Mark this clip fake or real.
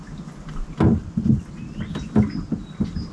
real